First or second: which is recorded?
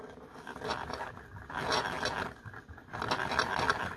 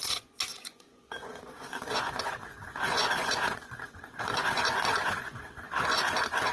first